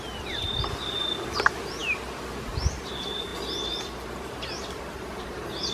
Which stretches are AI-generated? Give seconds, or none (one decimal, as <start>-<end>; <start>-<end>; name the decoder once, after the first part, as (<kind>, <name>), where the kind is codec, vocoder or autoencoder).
1.8-2.8 (vocoder, BigVGAN v2); 3.3-5.2